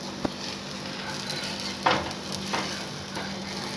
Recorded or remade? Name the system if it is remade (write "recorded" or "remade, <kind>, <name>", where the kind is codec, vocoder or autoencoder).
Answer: recorded